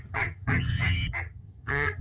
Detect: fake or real fake